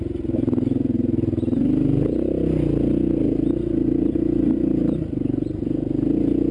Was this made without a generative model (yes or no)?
yes